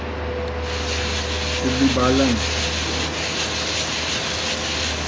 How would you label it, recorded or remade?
recorded